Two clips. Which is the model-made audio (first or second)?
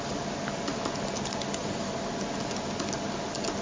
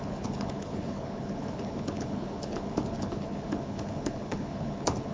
second